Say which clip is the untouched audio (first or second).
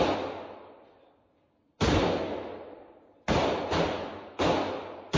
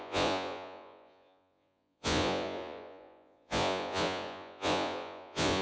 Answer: first